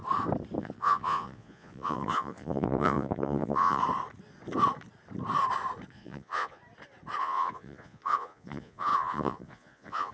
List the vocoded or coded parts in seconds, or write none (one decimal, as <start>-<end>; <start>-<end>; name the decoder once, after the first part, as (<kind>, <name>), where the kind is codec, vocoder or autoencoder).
0.6-3.8 (vocoder, Vocos); 5.9-6.6; 7.2-10.1